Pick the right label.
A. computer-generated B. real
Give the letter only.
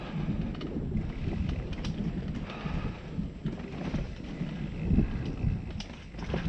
B